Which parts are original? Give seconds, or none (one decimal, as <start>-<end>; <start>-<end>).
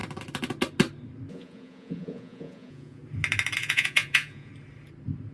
0.0-1.3; 3.0-3.6; 4.5-5.3